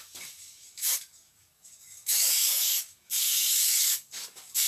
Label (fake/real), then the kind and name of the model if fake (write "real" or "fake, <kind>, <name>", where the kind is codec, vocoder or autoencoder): fake, codec, DAC